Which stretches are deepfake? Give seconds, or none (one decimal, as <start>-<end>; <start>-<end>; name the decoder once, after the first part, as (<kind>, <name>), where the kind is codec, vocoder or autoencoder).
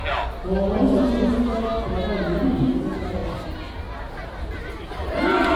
none